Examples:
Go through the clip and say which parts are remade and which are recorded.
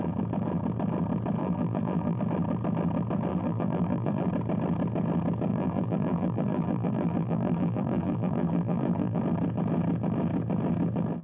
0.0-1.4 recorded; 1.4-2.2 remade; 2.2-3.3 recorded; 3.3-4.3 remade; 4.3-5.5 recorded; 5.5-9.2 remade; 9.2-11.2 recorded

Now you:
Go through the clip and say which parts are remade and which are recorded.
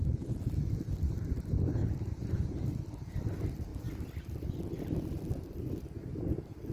0.0-1.8 recorded; 1.8-2.3 remade; 2.3-6.7 recorded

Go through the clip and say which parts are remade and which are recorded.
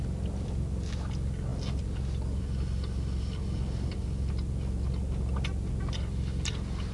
0.0-6.9 recorded